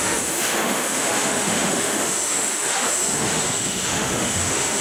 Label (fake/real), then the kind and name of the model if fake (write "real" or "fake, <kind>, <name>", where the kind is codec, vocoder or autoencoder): fake, autoencoder, DAC-VAE